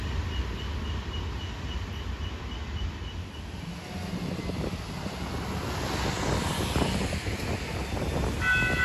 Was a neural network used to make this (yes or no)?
no